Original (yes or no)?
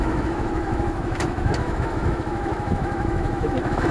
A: no